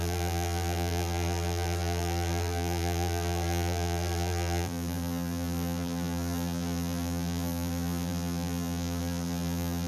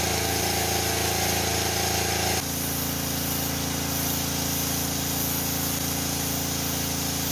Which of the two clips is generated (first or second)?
first